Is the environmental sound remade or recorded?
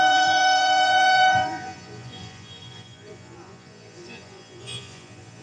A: remade